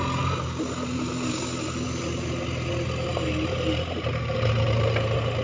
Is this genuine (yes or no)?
yes